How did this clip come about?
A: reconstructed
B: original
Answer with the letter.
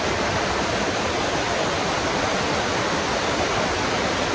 B